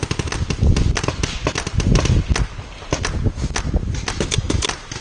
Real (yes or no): yes